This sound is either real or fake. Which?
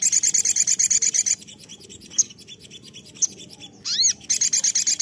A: real